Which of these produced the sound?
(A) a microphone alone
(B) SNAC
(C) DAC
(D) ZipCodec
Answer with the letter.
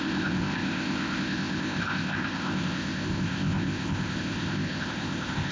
D